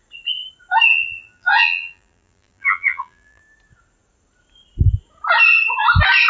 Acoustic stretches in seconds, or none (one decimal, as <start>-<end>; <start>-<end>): 0.0-0.9; 3.4-6.3